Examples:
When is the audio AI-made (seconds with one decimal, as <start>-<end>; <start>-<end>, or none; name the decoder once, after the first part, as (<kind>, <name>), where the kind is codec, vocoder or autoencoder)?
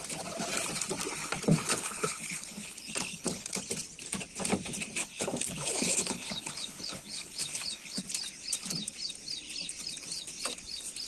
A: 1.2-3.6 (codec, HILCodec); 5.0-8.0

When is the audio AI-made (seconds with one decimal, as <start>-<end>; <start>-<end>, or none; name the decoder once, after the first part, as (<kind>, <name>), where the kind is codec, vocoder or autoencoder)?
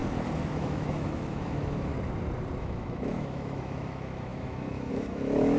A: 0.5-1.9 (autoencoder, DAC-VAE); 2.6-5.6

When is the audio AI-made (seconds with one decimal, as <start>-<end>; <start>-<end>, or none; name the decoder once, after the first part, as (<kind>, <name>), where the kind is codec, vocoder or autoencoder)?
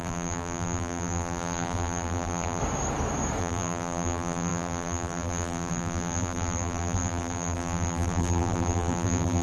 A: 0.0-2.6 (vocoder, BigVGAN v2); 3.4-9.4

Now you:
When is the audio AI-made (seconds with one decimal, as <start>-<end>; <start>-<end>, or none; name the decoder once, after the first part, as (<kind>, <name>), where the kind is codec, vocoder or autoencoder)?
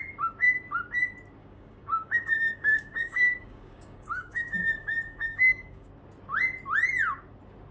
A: 1.4-5.9 (codec, DAC)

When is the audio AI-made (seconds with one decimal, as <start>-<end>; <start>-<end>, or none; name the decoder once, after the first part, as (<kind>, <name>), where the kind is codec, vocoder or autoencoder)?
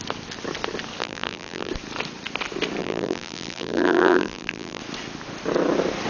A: 1.0-1.7 (vocoder, BigVGAN v2); 2.8-4.8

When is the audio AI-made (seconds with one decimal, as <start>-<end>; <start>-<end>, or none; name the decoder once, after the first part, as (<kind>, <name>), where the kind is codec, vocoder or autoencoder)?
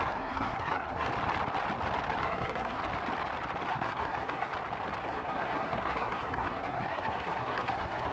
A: 0.0-1.1 (codec, SNAC); 2.2-2.8; 3.7-4.5; 5.0-8.1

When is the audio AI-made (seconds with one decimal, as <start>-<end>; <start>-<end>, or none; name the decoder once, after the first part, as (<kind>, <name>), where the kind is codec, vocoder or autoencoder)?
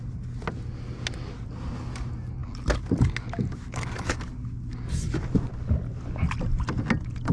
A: none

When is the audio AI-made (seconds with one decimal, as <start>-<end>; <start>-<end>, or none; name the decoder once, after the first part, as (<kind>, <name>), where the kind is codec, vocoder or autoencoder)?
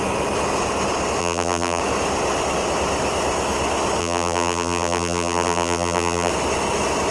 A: 1.2-1.8 (vocoder, BigVGAN v2); 4.0-6.3